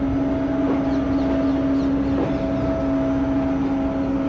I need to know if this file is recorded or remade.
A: recorded